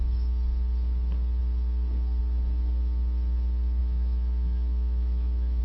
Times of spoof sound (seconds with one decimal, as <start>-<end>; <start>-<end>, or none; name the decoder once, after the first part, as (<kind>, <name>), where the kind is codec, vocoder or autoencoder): 3.8-5.6 (autoencoder, DAC-VAE)